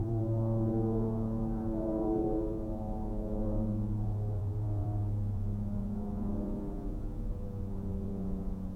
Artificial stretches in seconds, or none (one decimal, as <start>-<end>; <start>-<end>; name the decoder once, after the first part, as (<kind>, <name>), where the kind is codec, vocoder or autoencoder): 0.0-8.8 (vocoder, Vocos)